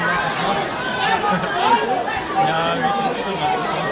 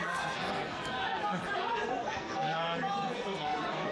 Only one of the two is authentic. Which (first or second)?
first